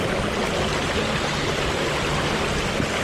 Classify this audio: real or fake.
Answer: real